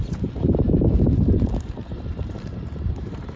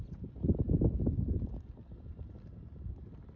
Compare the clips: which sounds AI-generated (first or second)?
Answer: first